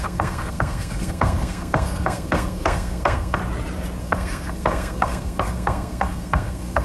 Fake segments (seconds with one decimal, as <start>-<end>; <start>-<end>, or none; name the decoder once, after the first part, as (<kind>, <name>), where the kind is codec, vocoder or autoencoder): 0.0-3.4 (codec, SNAC); 4.0-6.8